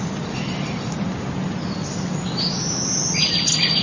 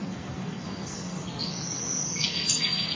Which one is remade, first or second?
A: second